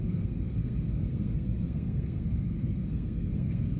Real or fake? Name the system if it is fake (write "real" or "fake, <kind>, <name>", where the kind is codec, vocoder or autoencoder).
fake, codec, SNAC